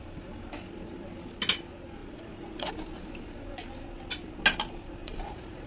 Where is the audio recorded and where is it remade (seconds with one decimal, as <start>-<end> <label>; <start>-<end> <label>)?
0.0-2.0 recorded; 2.0-2.7 remade; 2.7-5.0 recorded; 5.0-5.7 remade